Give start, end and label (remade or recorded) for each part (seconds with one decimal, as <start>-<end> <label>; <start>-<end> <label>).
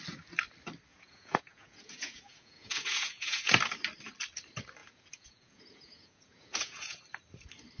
0.0-0.9 recorded; 0.9-3.5 remade; 3.5-4.8 recorded; 4.8-7.0 remade; 7.0-7.8 recorded